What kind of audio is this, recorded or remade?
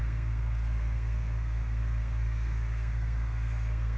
remade